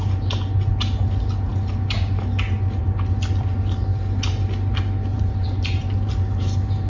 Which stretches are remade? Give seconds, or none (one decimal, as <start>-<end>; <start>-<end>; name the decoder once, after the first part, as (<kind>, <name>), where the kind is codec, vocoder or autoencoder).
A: 5.1-6.9 (vocoder, BigVGAN v2)